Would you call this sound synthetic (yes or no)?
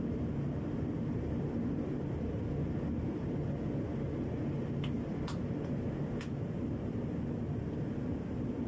no